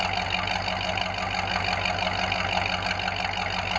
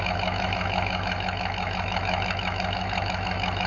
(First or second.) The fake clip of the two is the second